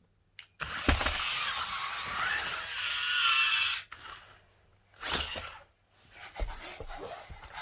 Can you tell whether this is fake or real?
real